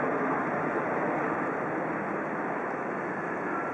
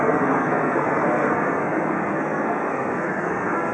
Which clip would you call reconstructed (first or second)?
second